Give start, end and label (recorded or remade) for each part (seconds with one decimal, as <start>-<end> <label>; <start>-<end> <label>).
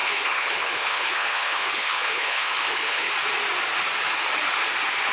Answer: 0.0-3.1 remade; 3.1-5.1 recorded